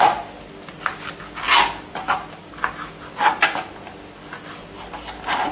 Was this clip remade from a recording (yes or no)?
no